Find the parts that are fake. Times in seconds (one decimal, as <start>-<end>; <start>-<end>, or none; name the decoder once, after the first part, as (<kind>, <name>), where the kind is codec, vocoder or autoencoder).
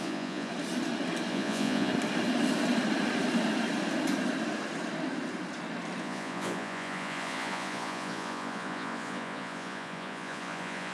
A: 0.0-0.5 (vocoder, Vocos); 1.3-1.9; 6.0-10.9